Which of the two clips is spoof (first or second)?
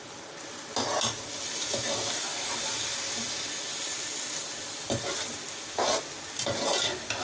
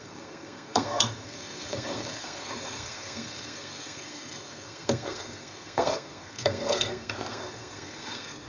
second